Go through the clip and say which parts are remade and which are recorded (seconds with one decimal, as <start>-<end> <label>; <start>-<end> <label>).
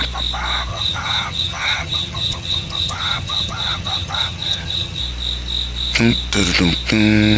0.0-0.7 recorded; 0.7-5.0 remade; 5.0-7.4 recorded